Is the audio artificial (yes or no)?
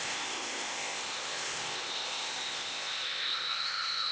yes